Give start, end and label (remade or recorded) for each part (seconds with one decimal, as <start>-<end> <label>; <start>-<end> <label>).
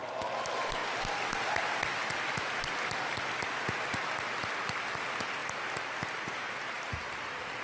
0.0-7.6 recorded